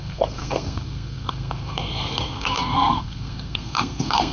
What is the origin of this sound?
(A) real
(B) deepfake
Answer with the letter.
B